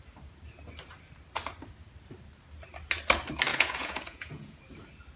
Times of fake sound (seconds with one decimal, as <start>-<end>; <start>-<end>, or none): 3.5-4.6